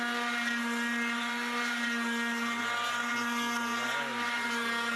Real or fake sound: real